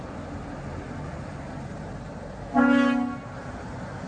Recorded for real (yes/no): yes